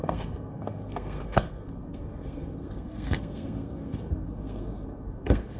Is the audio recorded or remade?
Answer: remade